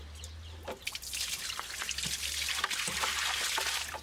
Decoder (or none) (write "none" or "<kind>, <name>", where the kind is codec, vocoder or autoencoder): none